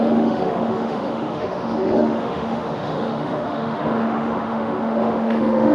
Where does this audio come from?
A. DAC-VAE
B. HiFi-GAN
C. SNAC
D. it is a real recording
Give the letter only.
A